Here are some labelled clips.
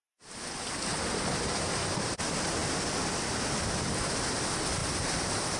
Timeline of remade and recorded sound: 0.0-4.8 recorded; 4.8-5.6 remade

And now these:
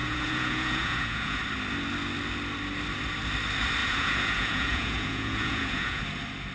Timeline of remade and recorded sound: 0.0-1.4 remade; 1.4-3.8 recorded; 3.8-6.0 remade; 6.0-6.5 recorded